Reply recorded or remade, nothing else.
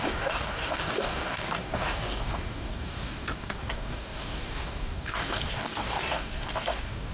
remade